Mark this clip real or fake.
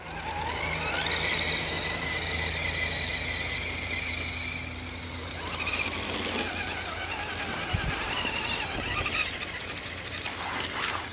real